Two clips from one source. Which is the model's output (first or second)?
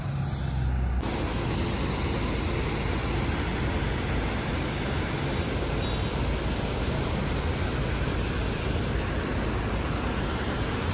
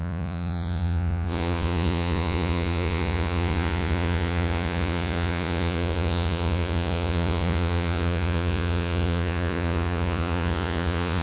second